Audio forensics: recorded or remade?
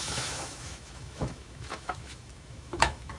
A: remade